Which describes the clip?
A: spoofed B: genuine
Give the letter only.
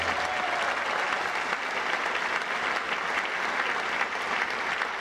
B